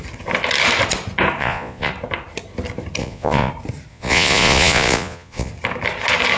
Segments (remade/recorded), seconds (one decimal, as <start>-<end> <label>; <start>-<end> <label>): 0.0-1.4 recorded; 1.4-1.9 remade; 1.9-3.0 recorded; 3.0-3.5 remade; 3.5-3.9 recorded; 3.9-5.5 remade; 5.5-6.4 recorded